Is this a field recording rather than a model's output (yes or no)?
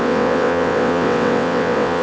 no